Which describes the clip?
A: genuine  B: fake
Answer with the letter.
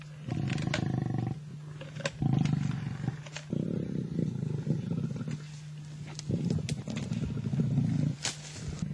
A